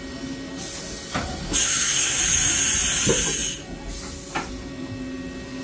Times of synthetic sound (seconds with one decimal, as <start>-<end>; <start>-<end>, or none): 1.6-2.2